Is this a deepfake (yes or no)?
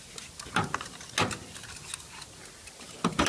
no